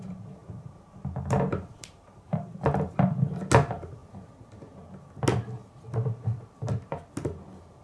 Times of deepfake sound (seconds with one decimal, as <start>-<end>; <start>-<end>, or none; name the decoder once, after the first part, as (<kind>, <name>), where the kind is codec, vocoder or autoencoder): 0.4-2.5 (vocoder, BigVGAN v2)